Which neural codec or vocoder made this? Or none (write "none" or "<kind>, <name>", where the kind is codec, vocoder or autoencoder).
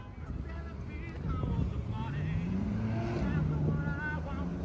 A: none